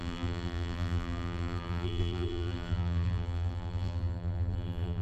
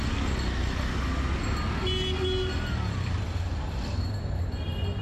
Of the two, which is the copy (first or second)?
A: first